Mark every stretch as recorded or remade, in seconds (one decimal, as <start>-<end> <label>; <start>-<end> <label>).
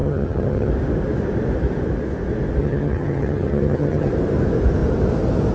0.0-0.7 remade; 0.7-2.6 recorded; 2.6-4.1 remade; 4.1-5.5 recorded